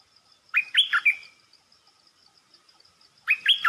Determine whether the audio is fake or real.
real